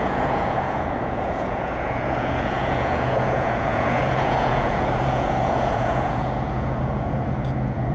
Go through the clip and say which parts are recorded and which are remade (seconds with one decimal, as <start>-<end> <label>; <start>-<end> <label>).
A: 0.0-7.9 remade